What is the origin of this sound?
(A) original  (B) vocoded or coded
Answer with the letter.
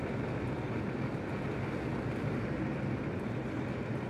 A